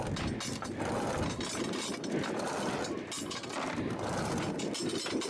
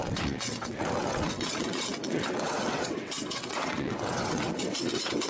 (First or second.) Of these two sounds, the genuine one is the first